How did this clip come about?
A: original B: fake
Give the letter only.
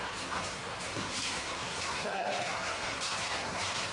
B